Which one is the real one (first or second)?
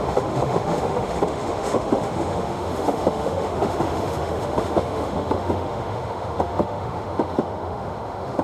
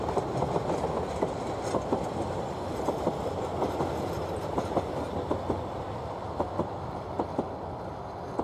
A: second